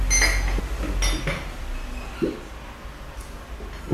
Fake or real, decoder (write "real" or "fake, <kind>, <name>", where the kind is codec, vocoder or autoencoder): real